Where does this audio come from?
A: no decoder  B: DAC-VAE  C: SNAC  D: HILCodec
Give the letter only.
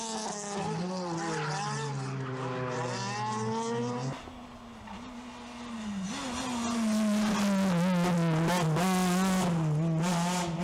A